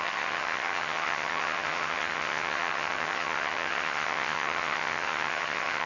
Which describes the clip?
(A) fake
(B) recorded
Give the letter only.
A